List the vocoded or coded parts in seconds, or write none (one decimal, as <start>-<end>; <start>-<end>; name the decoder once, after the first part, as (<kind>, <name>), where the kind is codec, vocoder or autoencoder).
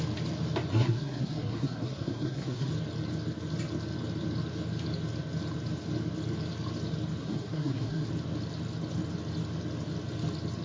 0.7-2.7 (codec, SNAC); 7.2-8.1